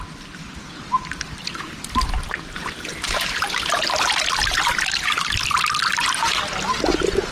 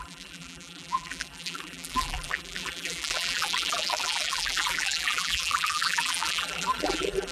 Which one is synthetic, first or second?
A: second